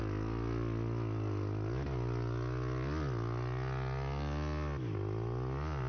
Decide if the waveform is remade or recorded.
recorded